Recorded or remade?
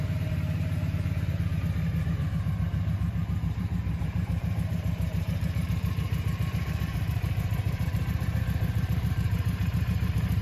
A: remade